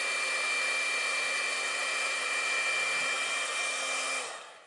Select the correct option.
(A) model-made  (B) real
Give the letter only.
B